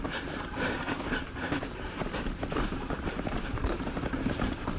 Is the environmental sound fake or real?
fake